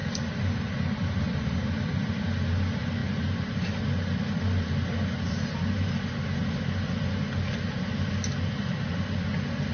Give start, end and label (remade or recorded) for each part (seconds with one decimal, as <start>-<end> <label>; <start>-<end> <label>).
0.0-2.1 remade; 2.1-9.7 recorded